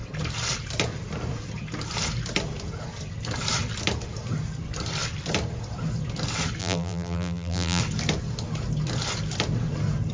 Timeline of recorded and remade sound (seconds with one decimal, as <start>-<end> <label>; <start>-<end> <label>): 0.0-6.6 recorded; 6.6-7.8 remade; 7.8-10.1 recorded